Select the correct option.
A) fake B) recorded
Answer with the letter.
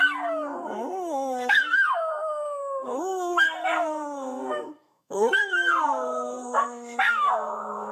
A